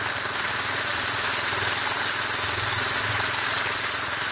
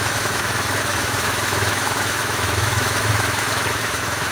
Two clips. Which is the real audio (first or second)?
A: first